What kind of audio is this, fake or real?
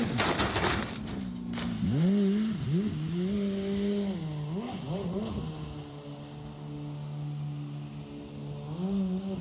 real